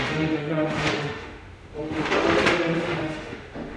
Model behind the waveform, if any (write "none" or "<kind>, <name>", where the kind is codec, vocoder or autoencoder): autoencoder, DAC-VAE